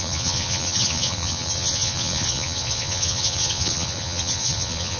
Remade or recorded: remade